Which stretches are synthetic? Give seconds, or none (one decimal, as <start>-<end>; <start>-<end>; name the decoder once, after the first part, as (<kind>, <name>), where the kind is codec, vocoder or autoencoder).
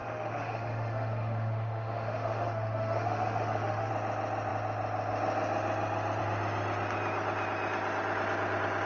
0.0-3.9 (autoencoder, DAC-VAE)